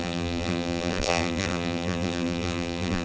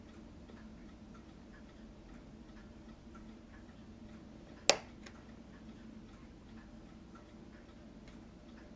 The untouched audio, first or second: second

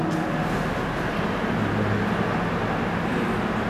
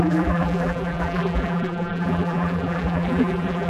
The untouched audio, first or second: first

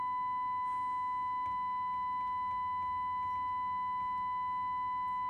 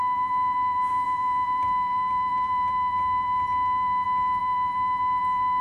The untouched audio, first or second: first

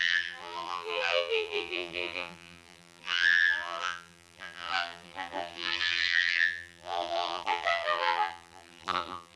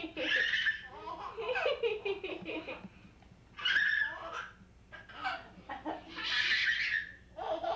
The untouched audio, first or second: second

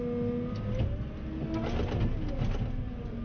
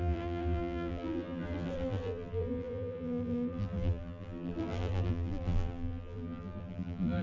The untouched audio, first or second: first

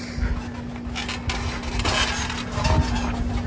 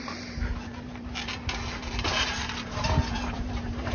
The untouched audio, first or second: first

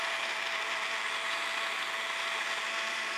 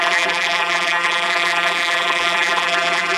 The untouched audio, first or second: first